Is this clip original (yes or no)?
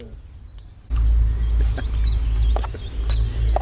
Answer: yes